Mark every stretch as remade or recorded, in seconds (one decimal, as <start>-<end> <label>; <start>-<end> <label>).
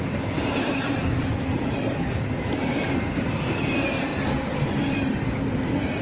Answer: 0.0-6.0 recorded